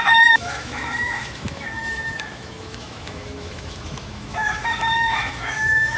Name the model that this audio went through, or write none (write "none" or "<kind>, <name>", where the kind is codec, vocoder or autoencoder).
autoencoder, DAC-VAE